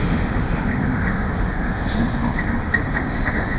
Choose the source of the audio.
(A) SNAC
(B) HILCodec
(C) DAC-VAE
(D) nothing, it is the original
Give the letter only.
C